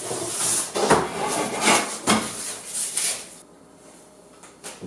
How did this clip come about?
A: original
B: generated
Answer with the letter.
A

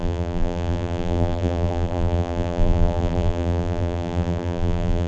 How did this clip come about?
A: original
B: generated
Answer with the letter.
B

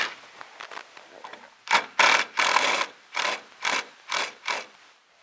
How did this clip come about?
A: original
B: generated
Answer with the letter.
B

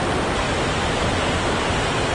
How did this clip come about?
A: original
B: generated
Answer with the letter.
B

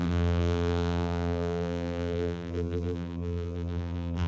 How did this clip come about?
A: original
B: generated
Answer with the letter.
B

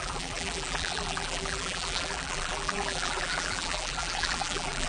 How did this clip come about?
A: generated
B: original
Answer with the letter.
A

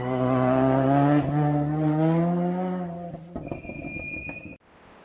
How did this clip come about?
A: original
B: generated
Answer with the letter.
A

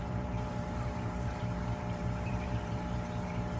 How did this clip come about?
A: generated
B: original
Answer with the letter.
A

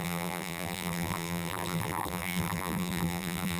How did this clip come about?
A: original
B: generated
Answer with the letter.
B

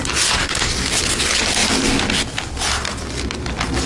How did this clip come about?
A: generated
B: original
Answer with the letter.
B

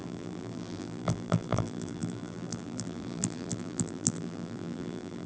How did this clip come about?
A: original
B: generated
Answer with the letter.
B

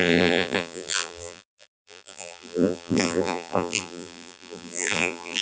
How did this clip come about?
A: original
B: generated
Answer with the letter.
B